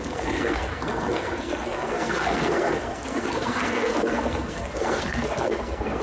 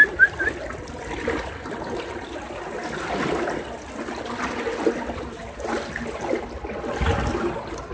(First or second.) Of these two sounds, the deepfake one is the first